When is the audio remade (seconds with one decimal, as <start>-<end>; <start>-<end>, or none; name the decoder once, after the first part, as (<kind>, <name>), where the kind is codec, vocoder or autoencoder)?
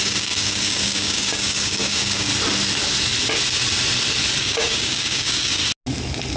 0.0-2.3 (codec, DAC); 4.4-5.6